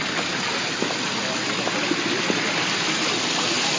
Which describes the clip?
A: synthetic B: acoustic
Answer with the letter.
B